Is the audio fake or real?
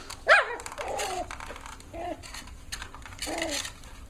real